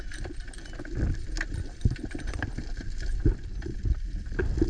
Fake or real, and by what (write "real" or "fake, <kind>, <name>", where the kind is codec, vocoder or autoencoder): real